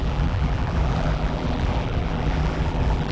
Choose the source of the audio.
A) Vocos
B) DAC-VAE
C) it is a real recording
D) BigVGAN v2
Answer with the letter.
D